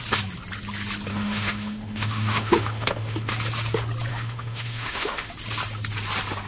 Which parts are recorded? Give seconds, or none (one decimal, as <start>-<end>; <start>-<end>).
0.0-1.1; 3.3-4.1; 5.3-6.5